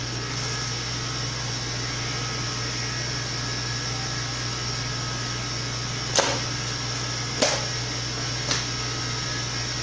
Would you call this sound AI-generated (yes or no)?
no